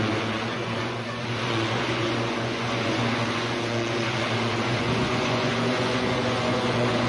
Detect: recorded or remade remade